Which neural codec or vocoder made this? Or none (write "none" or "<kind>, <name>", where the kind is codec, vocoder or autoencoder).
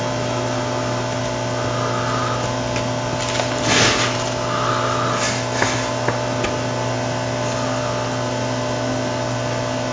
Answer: none